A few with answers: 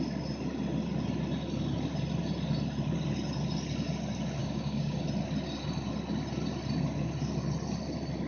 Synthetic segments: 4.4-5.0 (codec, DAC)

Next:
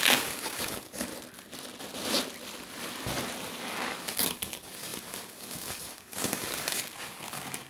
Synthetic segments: 0.0-1.1 (codec, DAC); 3.6-7.7